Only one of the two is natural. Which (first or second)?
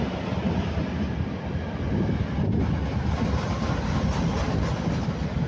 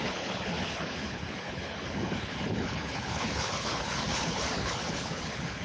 first